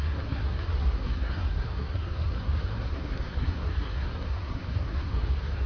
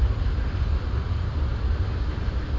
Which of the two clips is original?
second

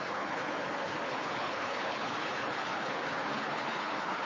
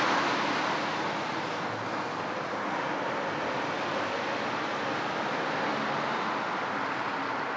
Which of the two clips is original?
second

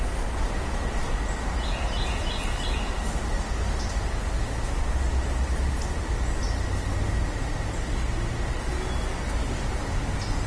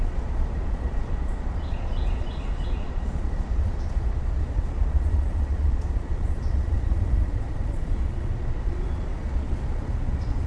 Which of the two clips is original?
first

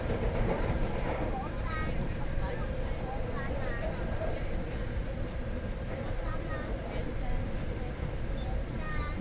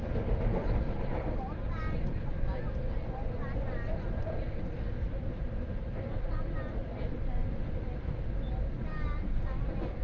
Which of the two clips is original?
second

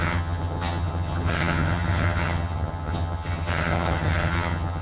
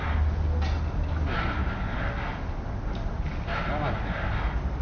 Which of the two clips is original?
second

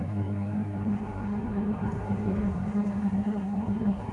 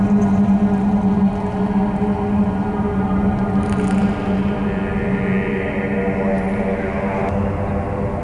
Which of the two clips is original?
second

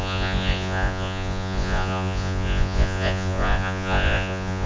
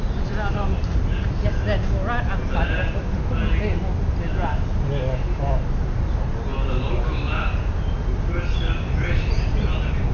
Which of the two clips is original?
second